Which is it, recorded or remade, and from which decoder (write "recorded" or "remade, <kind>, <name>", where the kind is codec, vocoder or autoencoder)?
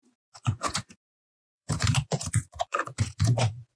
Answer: remade, vocoder, Vocos